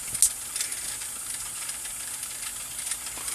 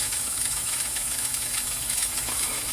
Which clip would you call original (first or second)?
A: first